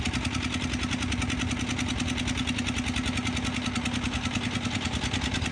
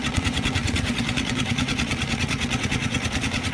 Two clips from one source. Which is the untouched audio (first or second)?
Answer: first